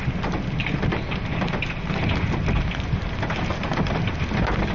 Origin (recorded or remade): recorded